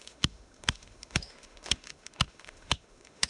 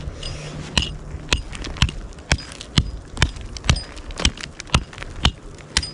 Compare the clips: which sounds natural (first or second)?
second